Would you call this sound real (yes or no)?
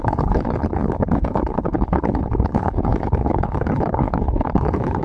no